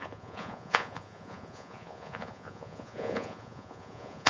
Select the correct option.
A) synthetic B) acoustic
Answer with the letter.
A